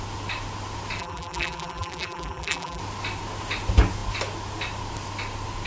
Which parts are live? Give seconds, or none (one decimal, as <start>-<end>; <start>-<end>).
0.0-1.0; 2.8-5.7